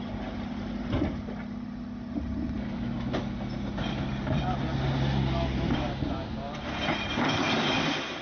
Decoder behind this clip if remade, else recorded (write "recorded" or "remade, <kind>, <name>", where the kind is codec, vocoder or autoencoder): recorded